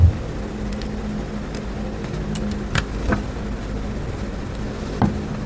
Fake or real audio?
real